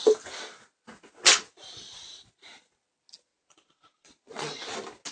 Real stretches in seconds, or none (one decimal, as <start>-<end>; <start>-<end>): 0.0-3.3; 4.6-5.1